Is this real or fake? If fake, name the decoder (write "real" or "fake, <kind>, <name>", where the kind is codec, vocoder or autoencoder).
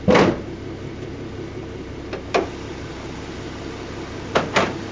real